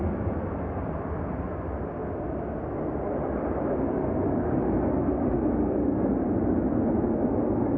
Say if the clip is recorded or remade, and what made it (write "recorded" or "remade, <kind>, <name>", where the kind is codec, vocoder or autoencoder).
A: recorded